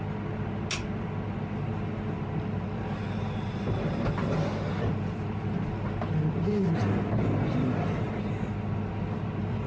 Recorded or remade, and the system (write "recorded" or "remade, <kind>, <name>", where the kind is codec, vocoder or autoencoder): recorded